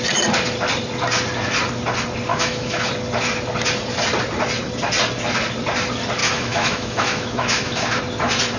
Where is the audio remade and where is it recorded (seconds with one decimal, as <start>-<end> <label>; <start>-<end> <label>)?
0.0-2.3 recorded; 2.3-2.9 remade; 2.9-6.2 recorded; 6.2-8.0 remade; 8.0-8.6 recorded